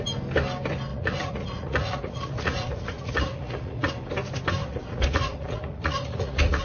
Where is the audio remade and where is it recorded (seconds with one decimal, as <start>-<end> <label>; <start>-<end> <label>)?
0.0-0.9 recorded; 0.9-3.9 remade; 3.9-4.6 recorded; 4.6-6.6 remade